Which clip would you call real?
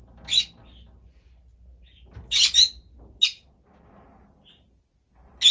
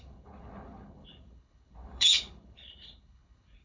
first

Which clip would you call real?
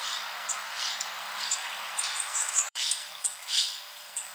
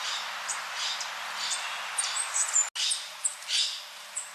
second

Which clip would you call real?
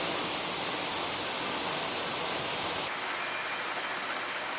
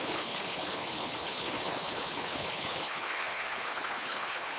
first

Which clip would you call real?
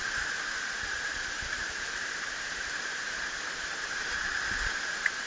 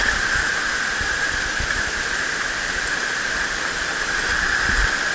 second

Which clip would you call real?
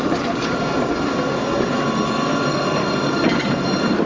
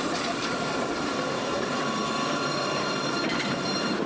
first